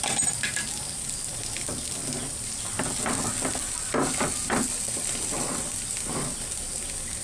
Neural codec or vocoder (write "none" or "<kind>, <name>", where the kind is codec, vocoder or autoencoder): none